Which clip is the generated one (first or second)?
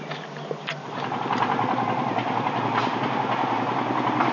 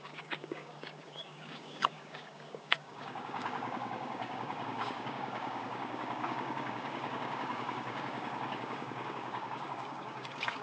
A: second